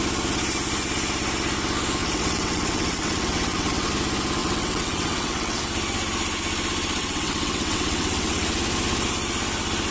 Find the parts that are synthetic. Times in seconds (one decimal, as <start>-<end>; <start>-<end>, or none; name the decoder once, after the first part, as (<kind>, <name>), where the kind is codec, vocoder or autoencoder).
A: 2.0-3.9 (vocoder, WaveNeXt); 4.4-5.6; 7.0-8.6